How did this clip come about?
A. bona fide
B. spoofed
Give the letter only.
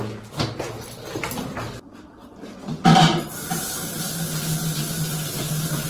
A